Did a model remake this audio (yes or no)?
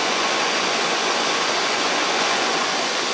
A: yes